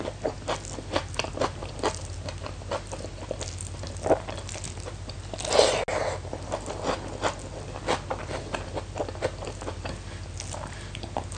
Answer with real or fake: real